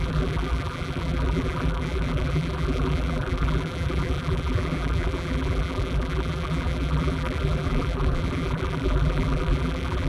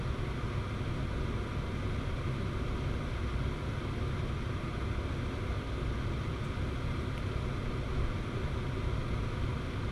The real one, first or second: second